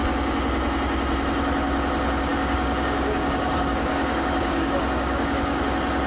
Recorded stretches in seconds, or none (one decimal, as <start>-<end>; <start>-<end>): 0.0-2.3; 5.6-6.1